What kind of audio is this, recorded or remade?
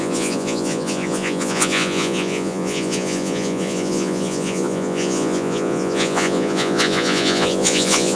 remade